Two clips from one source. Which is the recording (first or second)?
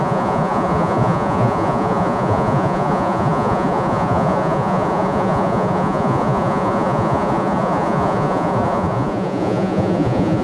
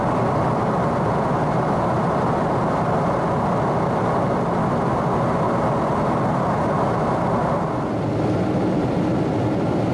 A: second